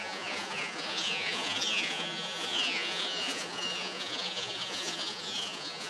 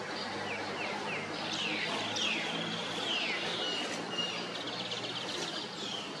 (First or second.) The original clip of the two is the second